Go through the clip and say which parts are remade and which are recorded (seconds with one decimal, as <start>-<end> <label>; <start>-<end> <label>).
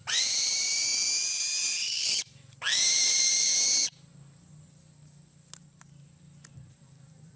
0.0-0.9 remade; 0.9-2.9 recorded; 2.9-3.5 remade; 3.5-6.6 recorded; 6.6-7.4 remade